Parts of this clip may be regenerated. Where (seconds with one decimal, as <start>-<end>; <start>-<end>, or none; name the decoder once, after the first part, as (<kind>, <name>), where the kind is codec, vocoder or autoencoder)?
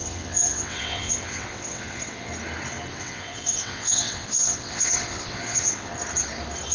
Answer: 0.0-2.3 (vocoder, WaveNeXt); 3.0-5.9